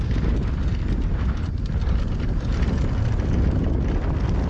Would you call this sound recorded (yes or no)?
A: yes